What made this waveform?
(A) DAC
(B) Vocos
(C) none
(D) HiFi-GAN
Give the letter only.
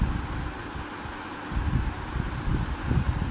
C